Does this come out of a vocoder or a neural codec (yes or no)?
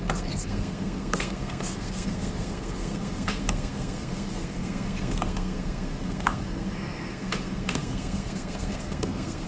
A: yes